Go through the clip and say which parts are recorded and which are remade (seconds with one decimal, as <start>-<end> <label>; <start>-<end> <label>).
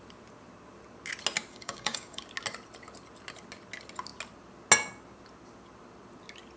0.0-1.5 recorded; 1.5-2.2 remade; 2.2-6.6 recorded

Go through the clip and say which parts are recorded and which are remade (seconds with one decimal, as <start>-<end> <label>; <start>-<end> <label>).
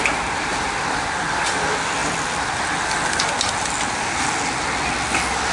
0.0-5.5 recorded